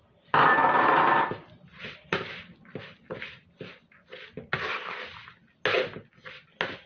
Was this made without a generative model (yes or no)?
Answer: yes